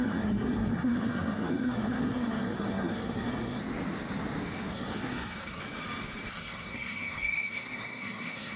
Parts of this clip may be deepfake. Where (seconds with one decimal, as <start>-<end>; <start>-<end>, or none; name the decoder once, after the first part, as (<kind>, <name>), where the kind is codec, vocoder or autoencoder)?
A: 0.0-3.6 (codec, SNAC); 4.7-5.6; 6.3-8.6